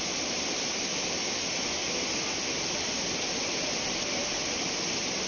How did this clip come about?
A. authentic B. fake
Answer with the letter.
A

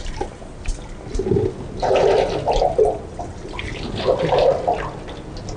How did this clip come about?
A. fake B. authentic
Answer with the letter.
B